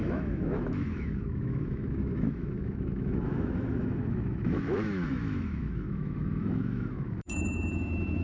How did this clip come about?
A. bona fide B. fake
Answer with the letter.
B